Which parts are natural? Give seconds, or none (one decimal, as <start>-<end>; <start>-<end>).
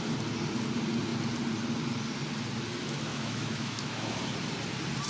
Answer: 0.0-3.1; 4.2-5.1